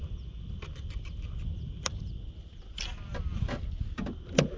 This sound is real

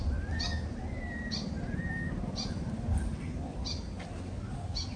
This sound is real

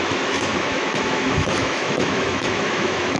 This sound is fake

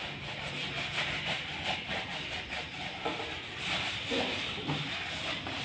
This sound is real